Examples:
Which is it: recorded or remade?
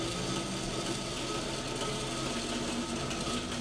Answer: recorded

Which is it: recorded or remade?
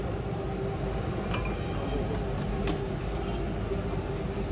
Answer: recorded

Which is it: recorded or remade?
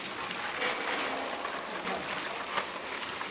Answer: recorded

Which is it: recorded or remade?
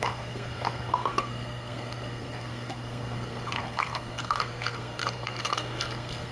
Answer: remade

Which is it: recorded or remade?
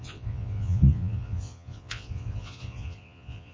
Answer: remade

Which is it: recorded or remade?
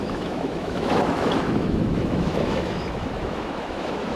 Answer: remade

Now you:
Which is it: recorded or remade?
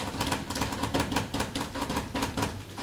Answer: recorded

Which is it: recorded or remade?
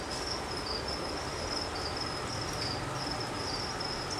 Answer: recorded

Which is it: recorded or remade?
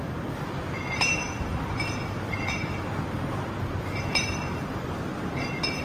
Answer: remade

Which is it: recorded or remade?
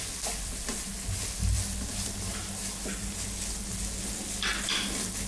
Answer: recorded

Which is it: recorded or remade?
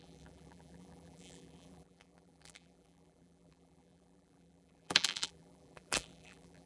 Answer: remade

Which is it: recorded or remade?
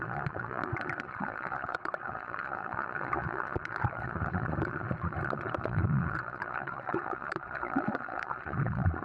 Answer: remade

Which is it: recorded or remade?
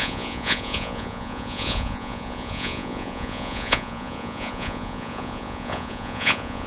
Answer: remade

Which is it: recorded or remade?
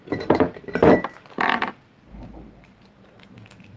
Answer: remade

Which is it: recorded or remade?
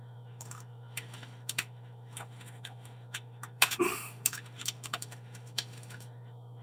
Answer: remade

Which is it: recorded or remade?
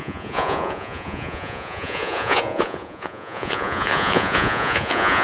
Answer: remade